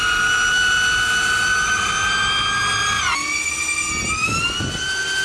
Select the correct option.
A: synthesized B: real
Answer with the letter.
B